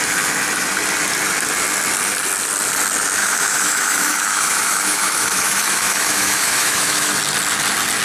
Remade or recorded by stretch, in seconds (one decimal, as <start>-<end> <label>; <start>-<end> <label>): 0.0-3.2 recorded; 3.2-7.1 remade; 7.1-8.0 recorded